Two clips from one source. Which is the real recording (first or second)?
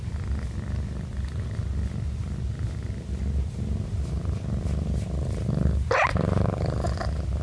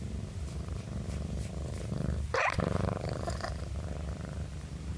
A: first